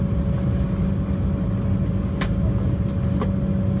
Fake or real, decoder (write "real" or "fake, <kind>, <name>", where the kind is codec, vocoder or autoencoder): real